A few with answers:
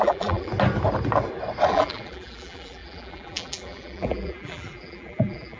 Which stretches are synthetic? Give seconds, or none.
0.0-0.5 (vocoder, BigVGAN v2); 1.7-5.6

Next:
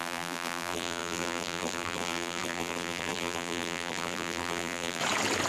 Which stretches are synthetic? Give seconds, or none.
0.0-5.0 (vocoder, BigVGAN v2)

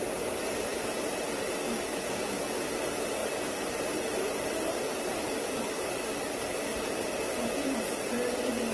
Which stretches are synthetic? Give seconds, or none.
0.7-1.5 (vocoder, BigVGAN v2); 3.2-5.4

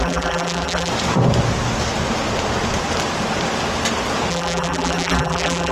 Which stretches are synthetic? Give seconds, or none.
0.0-0.9 (vocoder, BigVGAN v2); 4.3-5.7

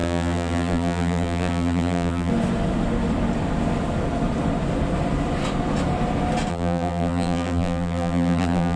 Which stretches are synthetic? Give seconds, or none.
0.0-2.3 (vocoder, BigVGAN v2); 6.5-8.8